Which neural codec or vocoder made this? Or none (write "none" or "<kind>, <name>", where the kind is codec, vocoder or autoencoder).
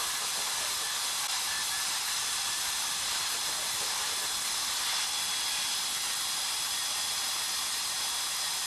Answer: none